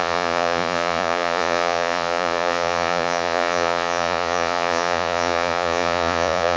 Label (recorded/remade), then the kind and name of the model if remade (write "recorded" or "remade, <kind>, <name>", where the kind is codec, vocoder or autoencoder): remade, vocoder, Vocos